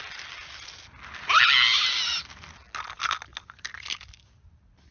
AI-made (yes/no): no